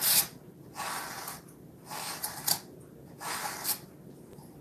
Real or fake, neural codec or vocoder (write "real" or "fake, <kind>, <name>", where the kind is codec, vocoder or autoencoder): real